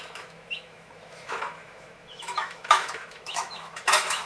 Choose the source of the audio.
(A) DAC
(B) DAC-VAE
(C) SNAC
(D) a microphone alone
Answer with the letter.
B